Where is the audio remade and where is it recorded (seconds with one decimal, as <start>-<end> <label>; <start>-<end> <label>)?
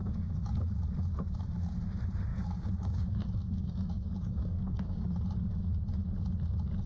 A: 0.0-0.7 remade; 0.7-2.3 recorded; 2.3-5.2 remade; 5.2-6.9 recorded